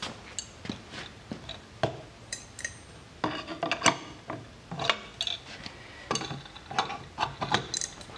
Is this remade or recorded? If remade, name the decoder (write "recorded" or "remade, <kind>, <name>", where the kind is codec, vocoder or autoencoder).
recorded